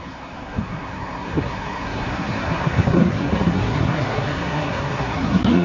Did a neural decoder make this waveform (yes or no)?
yes